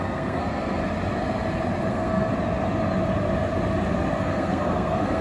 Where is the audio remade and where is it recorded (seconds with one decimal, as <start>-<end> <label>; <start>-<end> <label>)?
0.0-0.8 remade; 0.8-1.9 recorded; 1.9-2.3 remade; 2.3-4.2 recorded; 4.2-5.2 remade